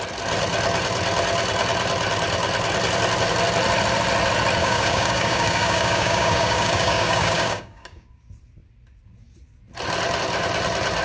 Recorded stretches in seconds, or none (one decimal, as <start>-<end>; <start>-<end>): 0.0-4.6; 8.1-11.0